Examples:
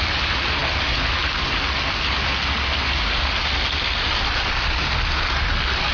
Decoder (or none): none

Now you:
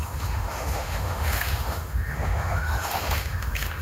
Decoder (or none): autoencoder, DAC-VAE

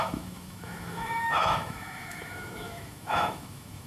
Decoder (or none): autoencoder, DAC-VAE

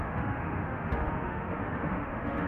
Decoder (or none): autoencoder, DAC-VAE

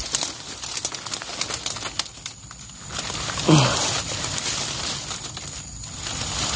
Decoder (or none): none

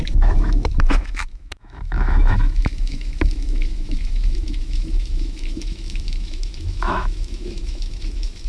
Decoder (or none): autoencoder, DAC-VAE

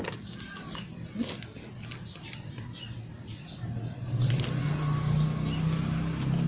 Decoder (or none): none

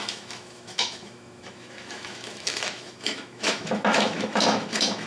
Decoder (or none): autoencoder, DAC-VAE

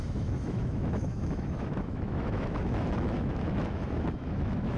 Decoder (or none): autoencoder, DAC-VAE